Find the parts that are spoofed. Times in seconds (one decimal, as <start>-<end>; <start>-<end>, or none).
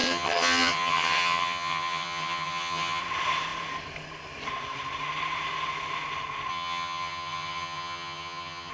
0.0-3.0; 6.5-8.7